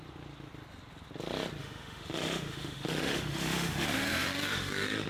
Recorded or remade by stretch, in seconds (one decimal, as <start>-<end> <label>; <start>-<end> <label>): 0.0-1.6 recorded; 1.6-5.1 remade